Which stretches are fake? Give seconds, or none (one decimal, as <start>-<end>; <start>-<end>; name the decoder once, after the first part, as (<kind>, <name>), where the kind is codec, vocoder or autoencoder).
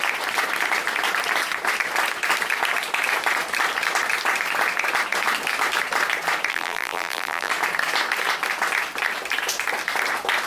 6.5-7.5 (vocoder, BigVGAN v2)